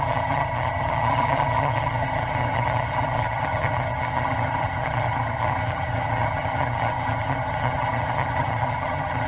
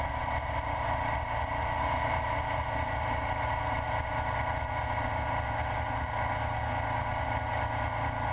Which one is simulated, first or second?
first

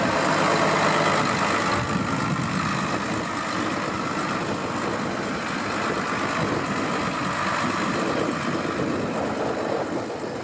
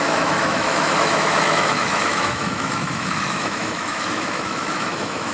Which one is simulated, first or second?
second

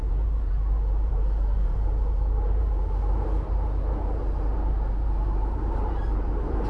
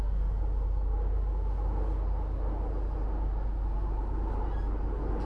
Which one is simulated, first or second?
first